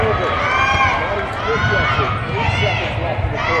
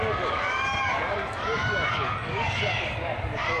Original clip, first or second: first